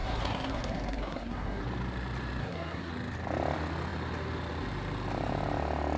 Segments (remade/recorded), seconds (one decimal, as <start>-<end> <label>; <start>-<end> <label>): 0.0-1.6 remade; 1.6-2.4 recorded; 2.4-2.9 remade; 2.9-6.0 recorded